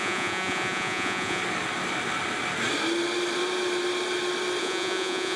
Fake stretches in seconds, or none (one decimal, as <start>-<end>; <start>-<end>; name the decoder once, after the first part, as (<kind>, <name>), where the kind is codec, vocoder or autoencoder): 0.0-1.4 (vocoder, Vocos); 4.6-5.4